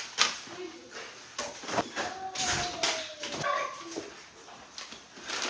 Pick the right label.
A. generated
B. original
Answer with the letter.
B